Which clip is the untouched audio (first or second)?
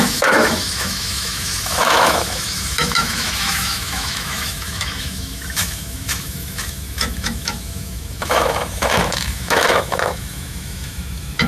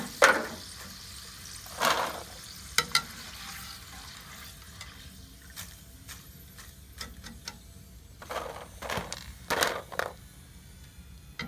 second